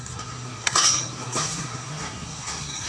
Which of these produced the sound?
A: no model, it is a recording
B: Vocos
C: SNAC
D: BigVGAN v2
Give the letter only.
C